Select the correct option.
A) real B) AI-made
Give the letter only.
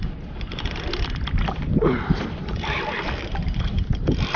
B